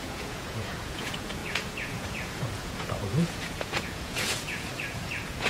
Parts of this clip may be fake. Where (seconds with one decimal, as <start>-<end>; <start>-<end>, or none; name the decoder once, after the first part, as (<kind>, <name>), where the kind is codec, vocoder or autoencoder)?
0.0-5.5 (vocoder, Vocos)